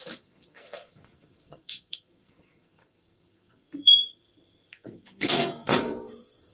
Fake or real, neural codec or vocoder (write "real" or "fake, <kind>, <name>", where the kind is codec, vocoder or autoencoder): fake, codec, SNAC